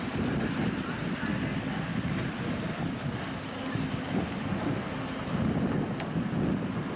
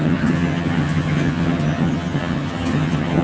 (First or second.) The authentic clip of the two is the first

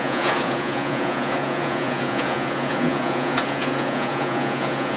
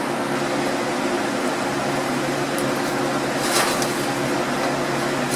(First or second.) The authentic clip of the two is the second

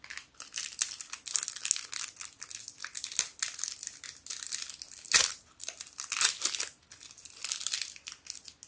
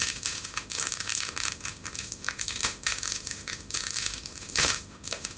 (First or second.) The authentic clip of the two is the first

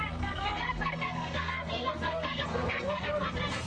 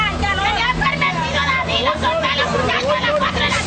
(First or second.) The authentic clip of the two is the second